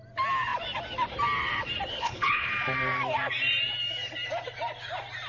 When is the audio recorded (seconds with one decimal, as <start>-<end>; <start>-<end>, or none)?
0.0-1.9; 2.5-5.3